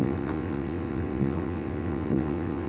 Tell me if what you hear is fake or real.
fake